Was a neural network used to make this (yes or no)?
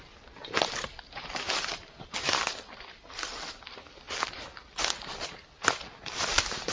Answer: no